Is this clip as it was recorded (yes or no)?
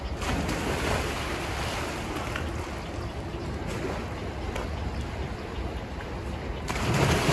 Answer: yes